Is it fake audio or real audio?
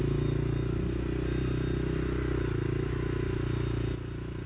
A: real